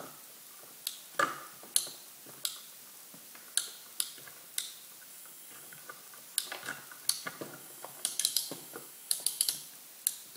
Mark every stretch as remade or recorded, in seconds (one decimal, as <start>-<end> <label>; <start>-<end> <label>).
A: 0.0-5.1 recorded; 5.1-5.8 remade; 5.8-7.6 recorded; 7.6-9.7 remade; 9.7-10.4 recorded